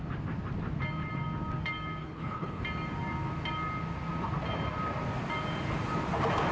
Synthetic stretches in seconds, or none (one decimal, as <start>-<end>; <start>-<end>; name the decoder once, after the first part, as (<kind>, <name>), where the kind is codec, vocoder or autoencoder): 2.0-2.6 (codec, HILCodec)